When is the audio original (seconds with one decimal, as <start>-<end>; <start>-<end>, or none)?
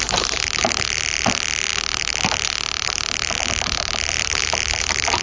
0.0-5.2